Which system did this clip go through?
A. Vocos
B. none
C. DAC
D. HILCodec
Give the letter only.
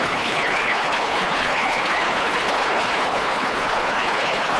D